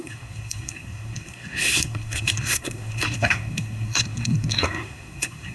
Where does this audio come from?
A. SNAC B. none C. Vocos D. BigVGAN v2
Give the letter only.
A